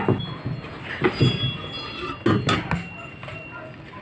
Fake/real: real